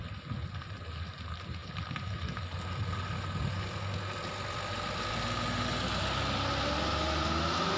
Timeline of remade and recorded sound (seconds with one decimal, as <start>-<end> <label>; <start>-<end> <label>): 0.0-7.8 recorded